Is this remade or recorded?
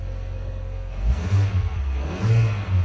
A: remade